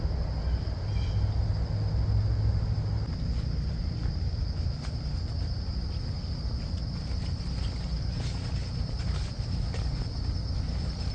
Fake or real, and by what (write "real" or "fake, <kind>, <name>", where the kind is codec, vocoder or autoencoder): real